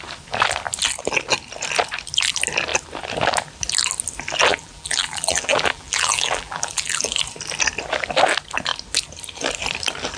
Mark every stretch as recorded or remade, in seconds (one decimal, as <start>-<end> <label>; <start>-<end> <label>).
0.0-4.5 recorded; 4.5-7.2 remade; 7.2-10.2 recorded

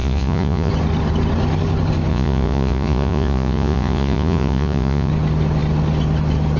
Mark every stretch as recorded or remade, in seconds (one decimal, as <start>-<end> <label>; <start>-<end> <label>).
0.0-0.7 remade; 0.7-2.1 recorded; 2.1-5.1 remade; 5.1-6.6 recorded

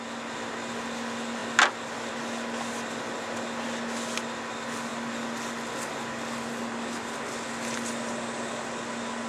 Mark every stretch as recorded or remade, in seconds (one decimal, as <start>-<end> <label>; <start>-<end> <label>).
0.0-9.3 recorded

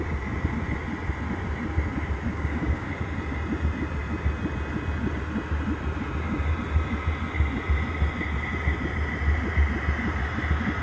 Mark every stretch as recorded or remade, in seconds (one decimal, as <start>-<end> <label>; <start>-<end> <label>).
0.0-2.3 recorded; 2.3-2.9 remade; 2.9-10.8 recorded

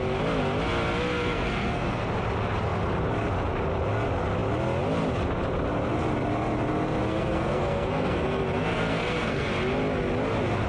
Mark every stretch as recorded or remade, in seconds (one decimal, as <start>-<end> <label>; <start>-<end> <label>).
0.0-1.2 recorded; 1.2-2.0 remade; 2.0-7.0 recorded; 7.0-9.5 remade; 9.5-10.7 recorded